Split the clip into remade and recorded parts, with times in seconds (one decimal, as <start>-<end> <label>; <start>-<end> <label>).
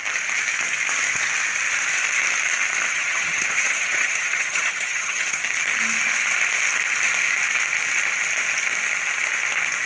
0.0-2.9 recorded; 2.9-5.4 remade; 5.4-9.9 recorded